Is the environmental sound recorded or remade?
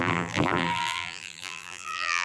remade